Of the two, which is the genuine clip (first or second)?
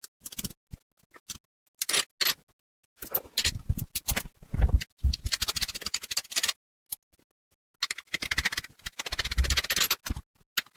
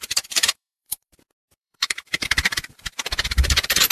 first